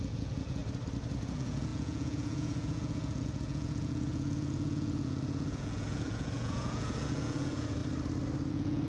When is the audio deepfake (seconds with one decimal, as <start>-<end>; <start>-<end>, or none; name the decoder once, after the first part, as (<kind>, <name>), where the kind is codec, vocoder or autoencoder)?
0.0-0.6 (vocoder, Vocos); 1.2-7.8; 8.5-8.9